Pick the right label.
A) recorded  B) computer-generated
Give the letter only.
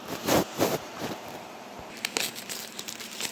B